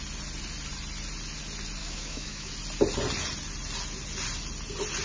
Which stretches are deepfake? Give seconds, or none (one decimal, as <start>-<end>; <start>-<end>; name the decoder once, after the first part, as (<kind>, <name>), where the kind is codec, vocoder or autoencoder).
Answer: 1.8-2.5 (autoencoder, DAC-VAE)